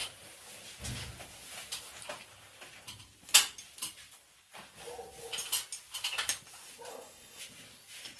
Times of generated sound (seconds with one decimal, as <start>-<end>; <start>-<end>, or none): 6.9-7.4